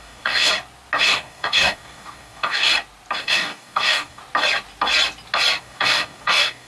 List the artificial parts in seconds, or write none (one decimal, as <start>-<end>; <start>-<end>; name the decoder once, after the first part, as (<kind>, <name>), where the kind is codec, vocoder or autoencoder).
0.0-0.5 (codec, DAC); 1.0-2.7; 3.2-4.2; 5.6-6.7